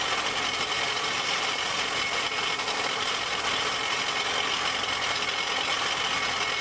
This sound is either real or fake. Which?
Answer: real